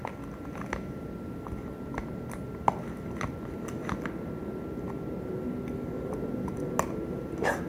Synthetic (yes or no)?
no